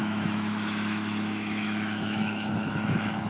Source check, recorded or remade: remade